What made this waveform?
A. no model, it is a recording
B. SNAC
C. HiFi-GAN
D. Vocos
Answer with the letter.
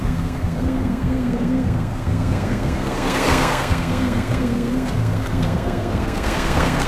B